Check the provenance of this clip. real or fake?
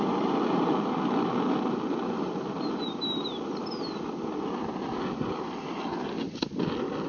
real